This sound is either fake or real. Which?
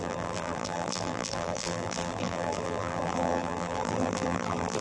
fake